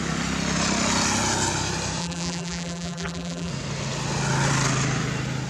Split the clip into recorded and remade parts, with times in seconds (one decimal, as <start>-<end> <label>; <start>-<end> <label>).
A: 0.0-2.0 recorded; 2.0-3.5 remade; 3.5-5.5 recorded